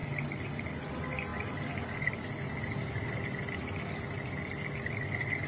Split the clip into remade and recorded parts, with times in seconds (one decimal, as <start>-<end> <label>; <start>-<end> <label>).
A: 0.0-5.5 recorded